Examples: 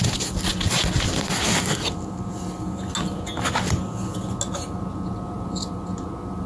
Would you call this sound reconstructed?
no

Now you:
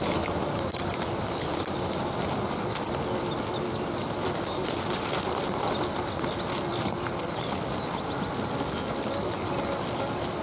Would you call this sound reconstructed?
no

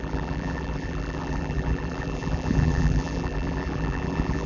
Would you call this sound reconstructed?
yes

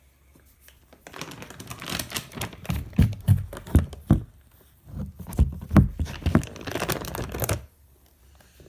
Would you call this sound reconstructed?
no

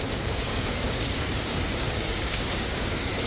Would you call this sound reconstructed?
yes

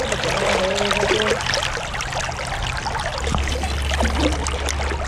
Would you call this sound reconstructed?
no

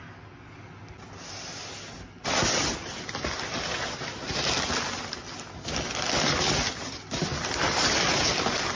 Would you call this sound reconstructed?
no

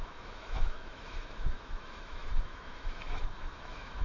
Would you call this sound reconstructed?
yes